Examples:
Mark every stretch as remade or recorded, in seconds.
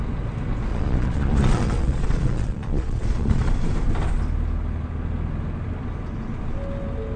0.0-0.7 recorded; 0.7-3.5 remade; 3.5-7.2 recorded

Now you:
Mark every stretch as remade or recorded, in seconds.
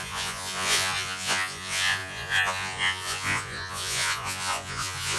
0.0-5.2 remade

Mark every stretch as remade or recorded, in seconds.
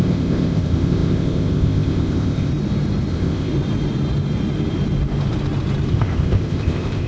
0.0-2.5 remade; 2.5-3.1 recorded; 3.1-3.5 remade; 3.5-5.9 recorded; 5.9-7.1 remade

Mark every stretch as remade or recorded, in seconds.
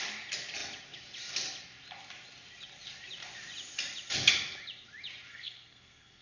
0.0-5.3 recorded; 5.3-6.2 remade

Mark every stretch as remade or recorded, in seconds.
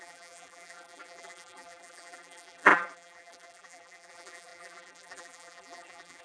0.0-6.2 remade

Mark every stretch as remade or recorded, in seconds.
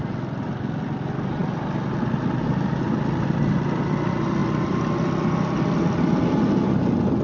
0.0-7.2 recorded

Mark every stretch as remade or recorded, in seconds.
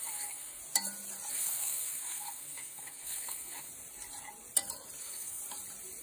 0.0-0.6 remade; 0.6-1.3 recorded; 1.3-3.7 remade; 3.7-5.0 recorded; 5.0-5.4 remade; 5.4-6.0 recorded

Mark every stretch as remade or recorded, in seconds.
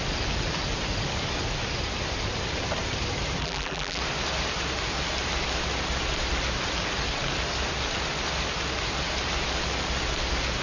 0.0-3.4 recorded; 3.4-4.0 remade; 4.0-10.6 recorded